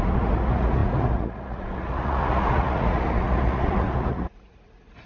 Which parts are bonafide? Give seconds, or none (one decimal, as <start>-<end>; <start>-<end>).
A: none

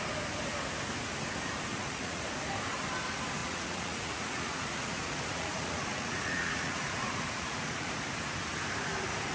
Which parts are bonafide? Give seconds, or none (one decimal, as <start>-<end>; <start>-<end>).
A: 0.0-1.7; 2.2-3.4; 7.9-9.3